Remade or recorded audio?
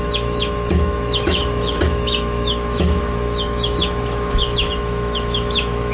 remade